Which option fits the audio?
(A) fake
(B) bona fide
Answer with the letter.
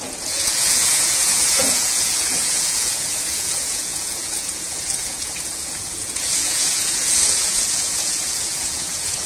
A